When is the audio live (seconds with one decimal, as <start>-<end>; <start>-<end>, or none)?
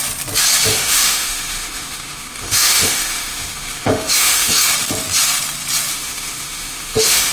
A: 0.0-0.7; 4.7-5.9